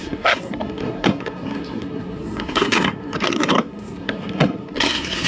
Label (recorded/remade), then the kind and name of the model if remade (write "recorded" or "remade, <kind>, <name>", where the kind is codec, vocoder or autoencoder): remade, codec, SNAC